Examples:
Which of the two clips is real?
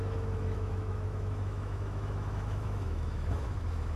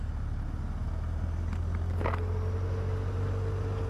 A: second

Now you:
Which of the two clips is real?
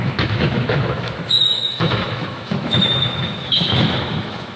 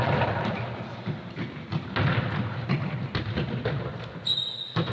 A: second